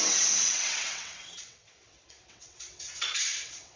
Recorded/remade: remade